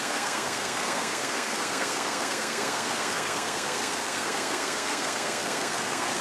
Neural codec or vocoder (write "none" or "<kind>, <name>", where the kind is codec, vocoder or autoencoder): codec, SNAC